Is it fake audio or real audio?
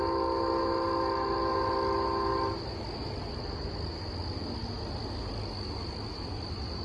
real